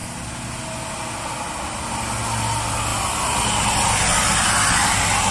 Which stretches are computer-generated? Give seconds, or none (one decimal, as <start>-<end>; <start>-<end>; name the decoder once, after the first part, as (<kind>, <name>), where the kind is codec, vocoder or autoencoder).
none